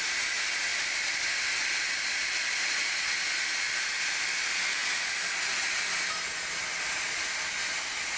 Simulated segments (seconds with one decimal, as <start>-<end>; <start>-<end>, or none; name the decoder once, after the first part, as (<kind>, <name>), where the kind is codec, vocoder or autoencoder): none